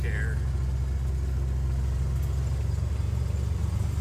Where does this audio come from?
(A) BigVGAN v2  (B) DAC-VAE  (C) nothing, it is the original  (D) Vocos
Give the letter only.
C